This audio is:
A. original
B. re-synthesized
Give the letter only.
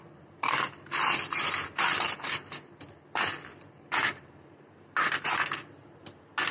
A